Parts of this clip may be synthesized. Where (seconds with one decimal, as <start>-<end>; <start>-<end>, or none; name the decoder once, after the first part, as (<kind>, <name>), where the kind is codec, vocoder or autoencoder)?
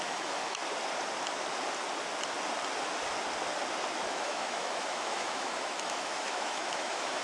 0.0-0.6 (autoencoder, DAC-VAE); 4.1-7.2